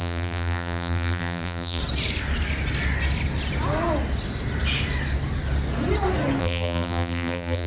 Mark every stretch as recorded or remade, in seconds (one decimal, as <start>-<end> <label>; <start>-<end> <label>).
0.0-1.8 remade; 1.8-6.4 recorded; 6.4-7.7 remade